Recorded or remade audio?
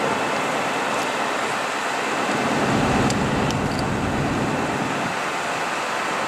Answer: recorded